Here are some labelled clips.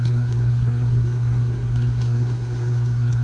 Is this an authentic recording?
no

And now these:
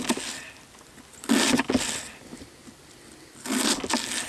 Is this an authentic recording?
yes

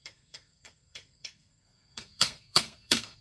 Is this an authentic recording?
no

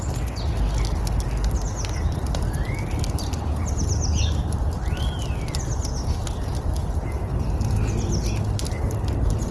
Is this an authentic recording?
yes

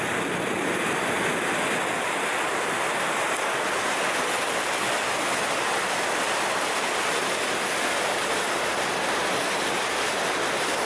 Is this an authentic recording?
yes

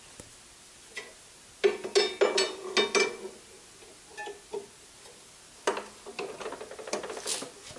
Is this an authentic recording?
yes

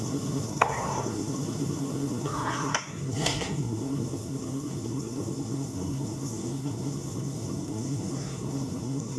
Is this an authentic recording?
no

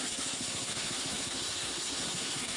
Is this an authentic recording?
no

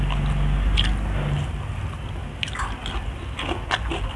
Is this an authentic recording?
yes